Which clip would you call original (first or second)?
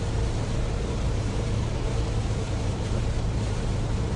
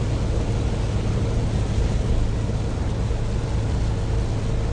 second